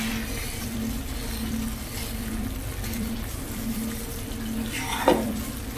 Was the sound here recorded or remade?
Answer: remade